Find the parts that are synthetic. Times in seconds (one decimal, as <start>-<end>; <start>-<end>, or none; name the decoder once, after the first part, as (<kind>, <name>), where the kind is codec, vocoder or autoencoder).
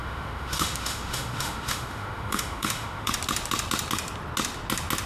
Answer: 0.0-3.1 (autoencoder, DAC-VAE)